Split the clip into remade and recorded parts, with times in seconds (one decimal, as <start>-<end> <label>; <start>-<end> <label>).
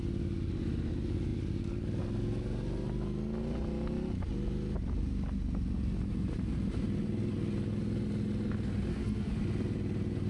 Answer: 0.0-8.9 recorded; 8.9-9.4 remade; 9.4-10.3 recorded